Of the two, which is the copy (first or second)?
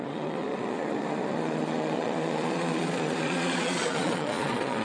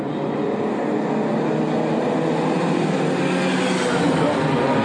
first